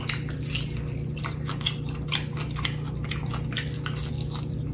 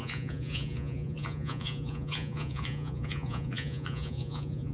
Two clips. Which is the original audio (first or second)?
first